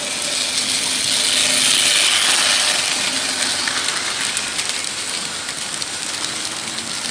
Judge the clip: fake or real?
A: real